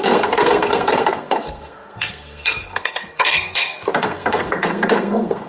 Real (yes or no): no